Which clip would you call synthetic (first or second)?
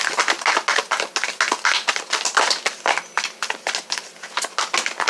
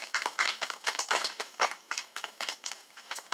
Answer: second